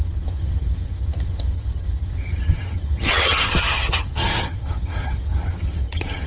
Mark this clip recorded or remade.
remade